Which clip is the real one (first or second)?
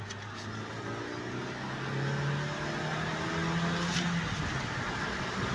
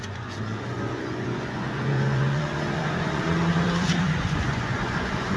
first